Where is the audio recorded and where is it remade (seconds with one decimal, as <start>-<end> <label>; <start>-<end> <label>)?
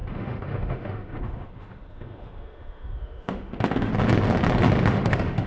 0.0-3.9 remade; 3.9-4.9 recorded; 4.9-5.5 remade